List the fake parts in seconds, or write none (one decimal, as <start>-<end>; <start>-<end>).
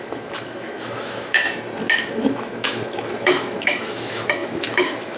0.0-1.4; 2.1-5.2